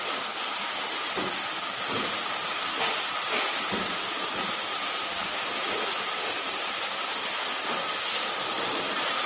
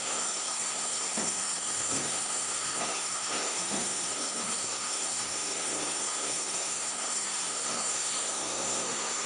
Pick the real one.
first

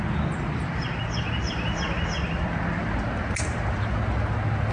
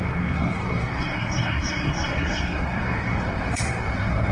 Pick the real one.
first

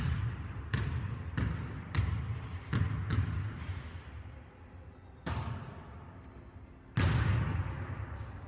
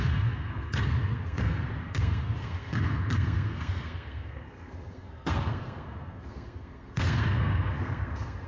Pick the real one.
first